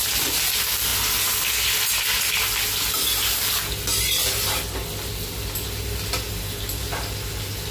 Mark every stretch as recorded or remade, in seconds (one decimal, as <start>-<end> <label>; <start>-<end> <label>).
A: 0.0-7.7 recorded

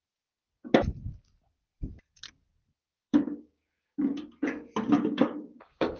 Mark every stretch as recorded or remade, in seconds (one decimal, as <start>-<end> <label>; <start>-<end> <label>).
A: 0.0-0.5 remade; 0.5-2.7 recorded; 2.7-4.1 remade; 4.1-5.0 recorded; 5.0-6.0 remade

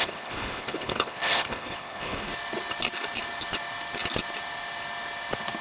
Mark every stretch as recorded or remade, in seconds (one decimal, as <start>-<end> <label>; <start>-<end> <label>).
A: 0.0-2.3 remade; 2.3-5.6 recorded

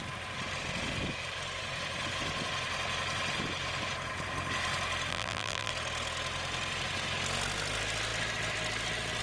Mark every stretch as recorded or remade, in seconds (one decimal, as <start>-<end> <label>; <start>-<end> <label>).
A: 0.0-5.1 recorded; 5.1-5.7 remade; 5.7-9.2 recorded

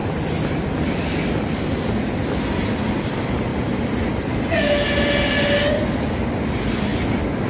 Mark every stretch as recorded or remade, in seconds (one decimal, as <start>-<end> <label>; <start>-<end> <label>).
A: 0.0-2.7 remade; 2.7-7.5 recorded

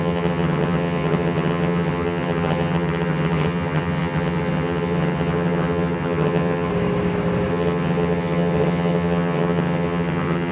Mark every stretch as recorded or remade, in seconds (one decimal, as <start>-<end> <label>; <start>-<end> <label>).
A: 0.0-6.7 remade; 6.7-7.5 recorded; 7.5-10.5 remade